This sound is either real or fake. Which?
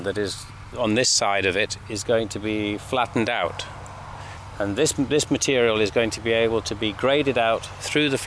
real